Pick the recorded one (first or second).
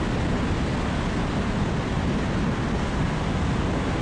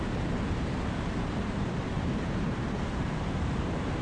first